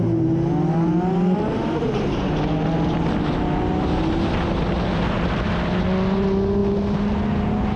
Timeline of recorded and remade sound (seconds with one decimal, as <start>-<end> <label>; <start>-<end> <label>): 0.0-7.8 recorded

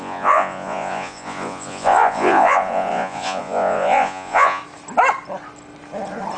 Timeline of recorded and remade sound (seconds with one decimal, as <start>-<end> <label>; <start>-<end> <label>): 0.0-4.6 remade; 4.6-6.4 recorded

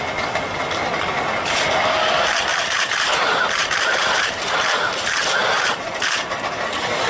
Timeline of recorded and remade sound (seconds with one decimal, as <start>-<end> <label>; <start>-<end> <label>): 0.0-2.5 recorded; 2.5-3.2 remade; 3.2-3.6 recorded; 3.6-4.5 remade; 4.5-5.4 recorded; 5.4-6.0 remade; 6.0-7.1 recorded

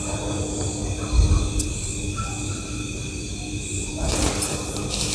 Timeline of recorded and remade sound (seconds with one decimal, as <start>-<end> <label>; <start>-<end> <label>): 0.0-5.1 recorded

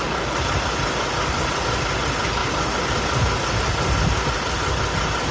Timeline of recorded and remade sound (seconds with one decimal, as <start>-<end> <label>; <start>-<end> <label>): 0.0-5.3 recorded

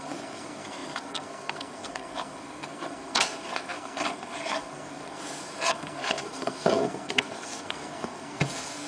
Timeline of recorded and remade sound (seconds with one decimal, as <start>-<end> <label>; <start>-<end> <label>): 0.0-8.9 remade

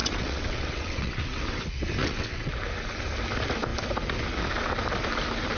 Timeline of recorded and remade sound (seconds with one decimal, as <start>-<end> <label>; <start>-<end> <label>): 0.0-1.6 remade; 1.6-2.0 recorded; 2.0-2.5 remade; 2.5-5.6 recorded

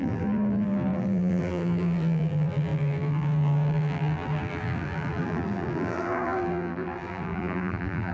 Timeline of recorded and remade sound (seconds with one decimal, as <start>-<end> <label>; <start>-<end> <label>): 0.0-8.1 remade